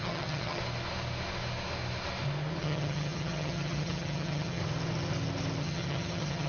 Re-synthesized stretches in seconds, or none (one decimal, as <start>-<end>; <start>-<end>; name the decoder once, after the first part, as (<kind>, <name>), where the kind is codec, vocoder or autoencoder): 0.0-0.6 (vocoder, HiFi-GAN); 2.6-4.6; 5.6-6.5